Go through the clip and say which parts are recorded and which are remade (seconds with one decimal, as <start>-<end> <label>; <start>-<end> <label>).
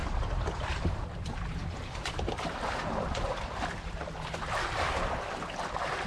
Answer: 0.0-1.0 remade; 1.0-6.1 recorded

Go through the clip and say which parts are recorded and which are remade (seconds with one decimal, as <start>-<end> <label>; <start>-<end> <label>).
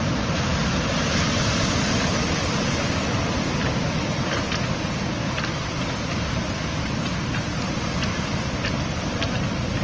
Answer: 0.0-9.8 recorded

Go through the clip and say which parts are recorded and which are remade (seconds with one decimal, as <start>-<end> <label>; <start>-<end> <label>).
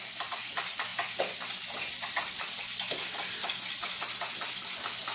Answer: 0.0-5.1 recorded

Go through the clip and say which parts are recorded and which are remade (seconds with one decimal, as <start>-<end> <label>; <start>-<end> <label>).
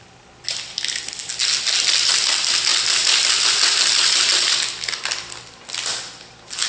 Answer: 0.0-2.7 recorded; 2.7-4.2 remade; 4.2-6.7 recorded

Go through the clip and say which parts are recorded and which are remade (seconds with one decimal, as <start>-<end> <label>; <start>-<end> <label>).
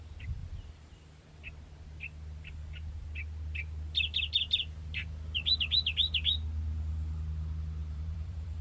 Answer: 0.0-0.4 recorded; 0.4-0.9 remade; 0.9-7.8 recorded; 7.8-8.6 remade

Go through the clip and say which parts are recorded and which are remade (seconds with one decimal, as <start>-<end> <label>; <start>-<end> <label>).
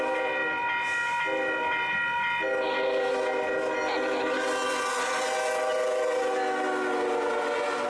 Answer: 0.0-7.9 recorded